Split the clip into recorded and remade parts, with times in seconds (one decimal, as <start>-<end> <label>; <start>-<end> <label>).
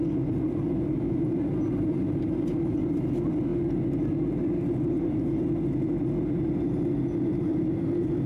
0.0-8.3 recorded